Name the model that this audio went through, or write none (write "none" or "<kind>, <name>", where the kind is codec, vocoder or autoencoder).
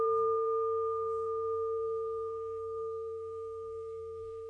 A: codec, SNAC